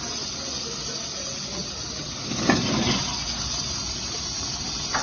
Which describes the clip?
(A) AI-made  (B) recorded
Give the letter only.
B